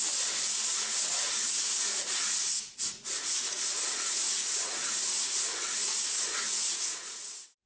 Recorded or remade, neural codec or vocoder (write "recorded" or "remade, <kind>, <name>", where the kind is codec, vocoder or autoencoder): remade, vocoder, Vocos